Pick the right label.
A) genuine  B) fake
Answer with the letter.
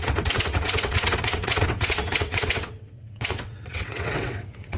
B